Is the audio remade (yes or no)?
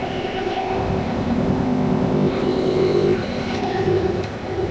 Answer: yes